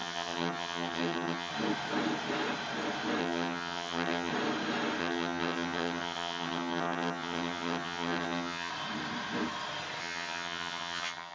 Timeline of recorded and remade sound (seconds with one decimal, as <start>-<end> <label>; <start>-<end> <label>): 0.0-1.5 remade; 1.5-3.2 recorded; 3.2-4.3 remade; 4.3-5.0 recorded; 5.0-8.7 remade; 8.7-10.0 recorded; 10.0-11.3 remade